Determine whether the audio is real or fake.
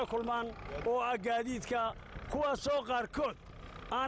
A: real